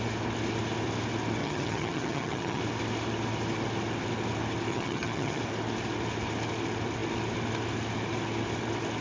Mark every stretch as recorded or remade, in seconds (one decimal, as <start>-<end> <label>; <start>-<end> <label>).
0.0-1.4 recorded; 1.4-2.6 remade; 2.6-4.7 recorded; 4.7-5.4 remade; 5.4-9.0 recorded

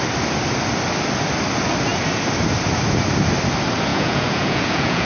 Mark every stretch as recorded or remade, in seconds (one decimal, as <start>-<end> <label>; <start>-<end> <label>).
0.0-3.9 recorded; 3.9-5.1 remade

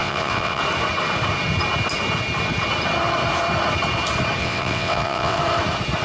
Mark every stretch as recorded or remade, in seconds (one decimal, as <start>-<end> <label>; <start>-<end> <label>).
0.0-0.6 remade; 0.6-4.4 recorded; 4.4-5.4 remade; 5.4-6.0 recorded

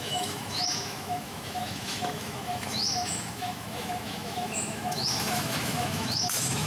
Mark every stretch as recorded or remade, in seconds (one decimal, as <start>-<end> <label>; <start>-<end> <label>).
0.0-6.7 remade

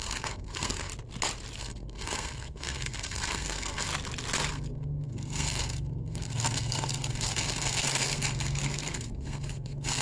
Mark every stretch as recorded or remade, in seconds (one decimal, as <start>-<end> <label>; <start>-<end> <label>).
0.0-0.9 remade; 0.9-1.6 recorded; 1.6-3.9 remade; 3.9-4.5 recorded; 4.5-10.0 remade

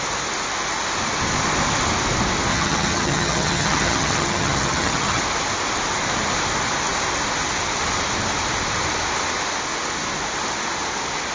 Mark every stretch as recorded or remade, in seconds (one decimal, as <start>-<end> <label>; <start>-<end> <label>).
0.0-2.5 recorded; 2.5-5.2 remade; 5.2-11.3 recorded

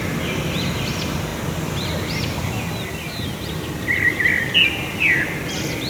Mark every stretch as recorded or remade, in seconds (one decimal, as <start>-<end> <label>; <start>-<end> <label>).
0.0-5.9 recorded